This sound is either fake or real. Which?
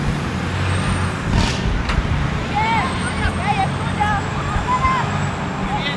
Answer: real